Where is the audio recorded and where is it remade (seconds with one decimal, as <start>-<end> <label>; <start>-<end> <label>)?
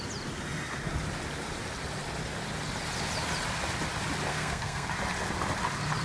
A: 0.0-4.3 recorded; 4.3-4.9 remade; 4.9-6.0 recorded